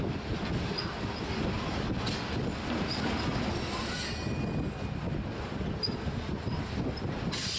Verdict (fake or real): real